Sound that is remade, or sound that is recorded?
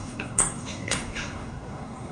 remade